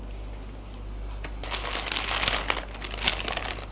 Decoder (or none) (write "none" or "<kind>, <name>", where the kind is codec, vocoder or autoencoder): none